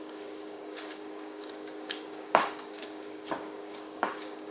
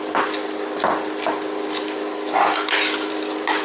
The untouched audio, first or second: second